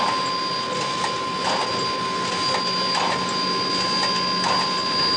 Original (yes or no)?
yes